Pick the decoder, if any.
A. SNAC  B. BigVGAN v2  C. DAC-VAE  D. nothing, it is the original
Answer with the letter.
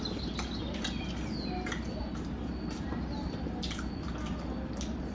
D